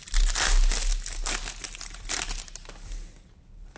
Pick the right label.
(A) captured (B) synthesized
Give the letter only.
A